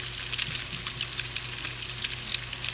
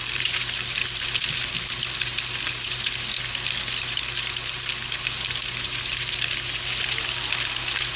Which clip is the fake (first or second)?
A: second